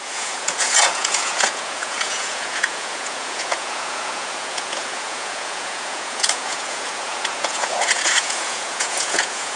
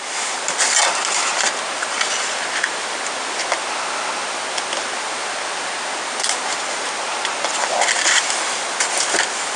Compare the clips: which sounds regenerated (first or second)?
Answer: first